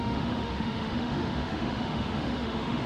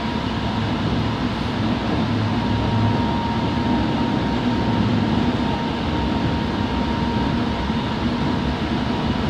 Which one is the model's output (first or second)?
first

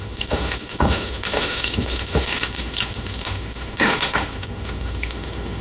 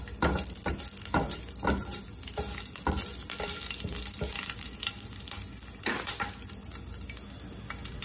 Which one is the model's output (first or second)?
first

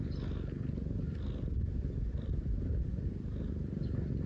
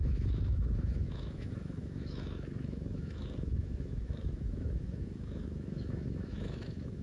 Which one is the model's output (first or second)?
second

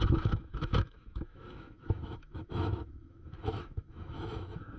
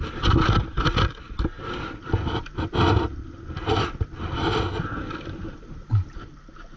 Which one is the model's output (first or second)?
first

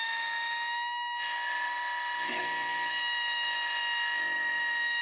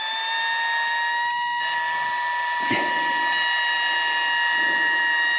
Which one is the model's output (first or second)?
first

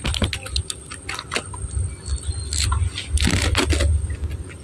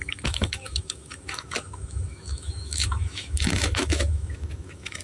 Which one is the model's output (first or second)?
second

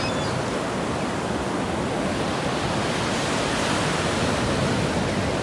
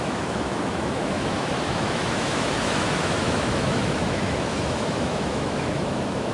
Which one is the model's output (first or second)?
second